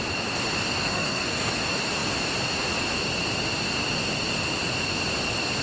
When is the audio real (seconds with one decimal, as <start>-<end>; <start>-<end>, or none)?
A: 0.0-0.7; 1.5-5.6